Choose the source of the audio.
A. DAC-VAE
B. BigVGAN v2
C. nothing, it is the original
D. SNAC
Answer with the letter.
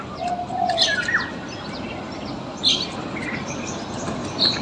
C